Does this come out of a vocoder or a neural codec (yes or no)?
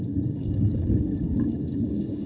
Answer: yes